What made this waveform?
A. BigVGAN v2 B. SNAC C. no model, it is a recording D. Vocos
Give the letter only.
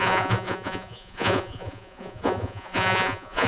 D